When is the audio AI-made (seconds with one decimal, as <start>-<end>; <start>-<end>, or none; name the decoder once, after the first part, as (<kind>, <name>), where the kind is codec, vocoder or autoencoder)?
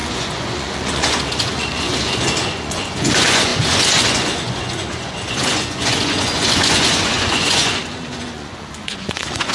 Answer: 0.0-9.5 (vocoder, Vocos)